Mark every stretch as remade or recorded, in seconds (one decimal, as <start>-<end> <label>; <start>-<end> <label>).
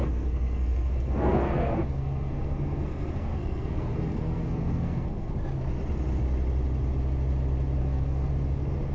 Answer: 0.0-5.3 remade; 5.3-7.8 recorded; 7.8-8.3 remade; 8.3-8.9 recorded